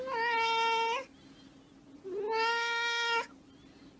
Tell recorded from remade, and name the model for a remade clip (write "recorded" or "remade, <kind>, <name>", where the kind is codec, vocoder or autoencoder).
recorded